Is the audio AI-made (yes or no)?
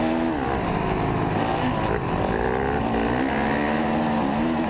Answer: no